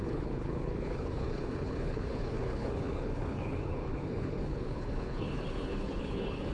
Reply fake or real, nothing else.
fake